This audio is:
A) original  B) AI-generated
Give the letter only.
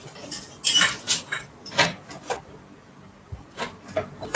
A